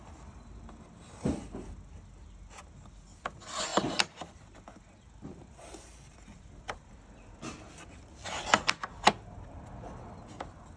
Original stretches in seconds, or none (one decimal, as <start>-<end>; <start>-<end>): 0.0-3.7; 4.4-6.3; 6.9-10.8

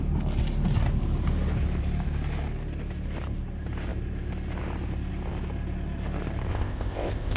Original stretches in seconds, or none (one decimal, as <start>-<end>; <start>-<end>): 0.0-6.5

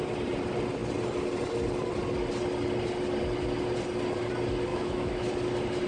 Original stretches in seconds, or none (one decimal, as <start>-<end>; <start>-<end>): 0.0-4.7; 5.3-5.9

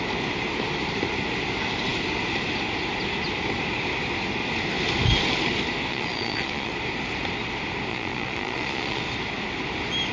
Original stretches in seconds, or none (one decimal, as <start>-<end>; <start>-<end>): 0.0-5.9; 6.7-7.9; 9.0-10.1

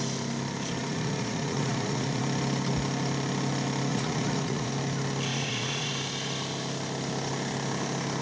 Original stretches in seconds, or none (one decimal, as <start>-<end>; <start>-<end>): 0.0-0.8; 2.2-3.9; 4.7-5.3; 5.9-8.2